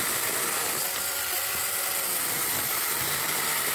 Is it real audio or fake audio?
fake